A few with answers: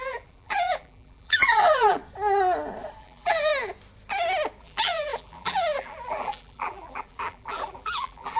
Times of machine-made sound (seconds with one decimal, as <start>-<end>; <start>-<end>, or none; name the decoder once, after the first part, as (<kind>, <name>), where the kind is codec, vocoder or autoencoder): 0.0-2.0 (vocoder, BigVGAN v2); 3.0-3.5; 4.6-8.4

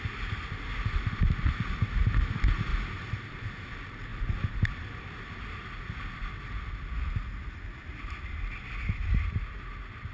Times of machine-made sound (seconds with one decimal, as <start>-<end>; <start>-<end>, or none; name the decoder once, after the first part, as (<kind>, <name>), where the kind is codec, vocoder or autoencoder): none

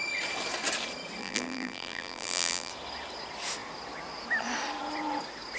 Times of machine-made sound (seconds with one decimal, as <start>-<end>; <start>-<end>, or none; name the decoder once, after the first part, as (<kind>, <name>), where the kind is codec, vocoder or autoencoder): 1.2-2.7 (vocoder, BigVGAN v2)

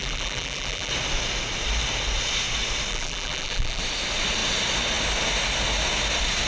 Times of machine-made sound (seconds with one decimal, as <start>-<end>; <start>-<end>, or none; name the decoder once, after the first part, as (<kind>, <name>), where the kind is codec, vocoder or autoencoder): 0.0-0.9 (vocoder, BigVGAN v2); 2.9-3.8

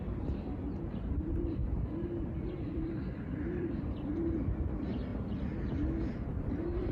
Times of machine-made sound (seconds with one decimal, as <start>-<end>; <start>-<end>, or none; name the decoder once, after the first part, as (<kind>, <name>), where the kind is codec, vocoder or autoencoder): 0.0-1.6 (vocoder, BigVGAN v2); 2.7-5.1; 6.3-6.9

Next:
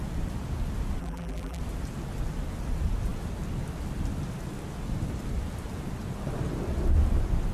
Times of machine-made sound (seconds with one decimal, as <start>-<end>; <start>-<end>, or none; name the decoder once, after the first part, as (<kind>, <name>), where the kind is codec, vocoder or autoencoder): 1.0-1.6 (vocoder, BigVGAN v2)

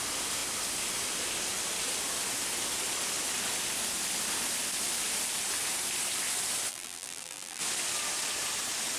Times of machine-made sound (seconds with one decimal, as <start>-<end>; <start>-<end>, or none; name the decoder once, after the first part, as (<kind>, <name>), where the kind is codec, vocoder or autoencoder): 6.7-7.6 (vocoder, BigVGAN v2)

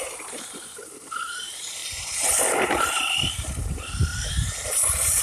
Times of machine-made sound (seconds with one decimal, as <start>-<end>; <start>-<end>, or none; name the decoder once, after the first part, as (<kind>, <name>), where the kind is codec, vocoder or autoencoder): 0.0-5.2 (vocoder, BigVGAN v2)